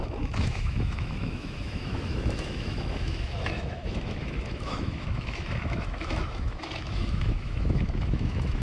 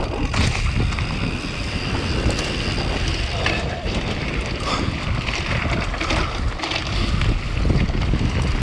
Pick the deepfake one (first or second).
first